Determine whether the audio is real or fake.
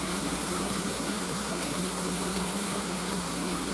fake